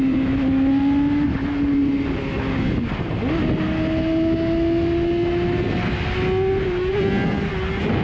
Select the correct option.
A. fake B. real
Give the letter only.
B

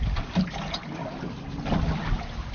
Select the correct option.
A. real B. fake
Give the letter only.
A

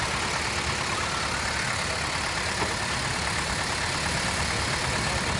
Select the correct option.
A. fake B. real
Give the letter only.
B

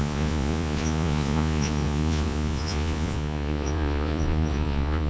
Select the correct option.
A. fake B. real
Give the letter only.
A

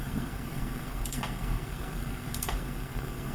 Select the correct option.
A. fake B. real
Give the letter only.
A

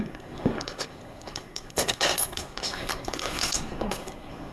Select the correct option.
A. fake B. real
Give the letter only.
A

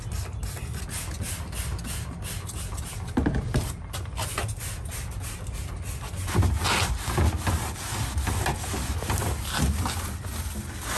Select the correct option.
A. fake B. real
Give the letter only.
B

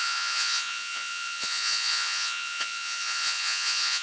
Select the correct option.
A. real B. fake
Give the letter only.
B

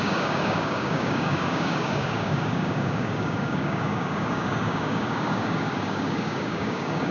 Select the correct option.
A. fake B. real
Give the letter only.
A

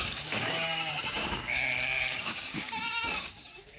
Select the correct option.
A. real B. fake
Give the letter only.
B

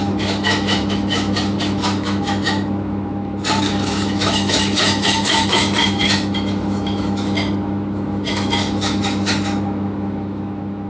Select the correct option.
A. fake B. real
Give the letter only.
A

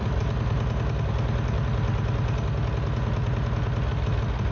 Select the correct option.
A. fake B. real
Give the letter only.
B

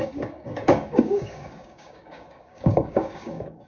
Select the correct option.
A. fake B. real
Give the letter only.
A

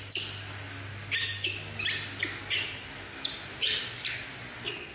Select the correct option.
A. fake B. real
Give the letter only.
B